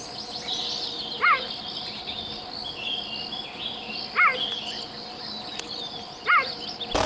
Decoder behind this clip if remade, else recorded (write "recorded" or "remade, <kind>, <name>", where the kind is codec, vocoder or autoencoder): recorded